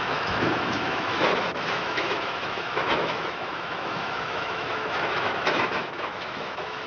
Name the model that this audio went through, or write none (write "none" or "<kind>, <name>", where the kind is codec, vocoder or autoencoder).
autoencoder, DAC-VAE